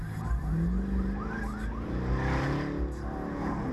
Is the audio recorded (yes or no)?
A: yes